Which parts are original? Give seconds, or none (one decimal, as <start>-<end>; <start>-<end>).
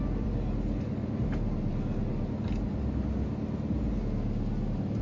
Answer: 0.0-5.0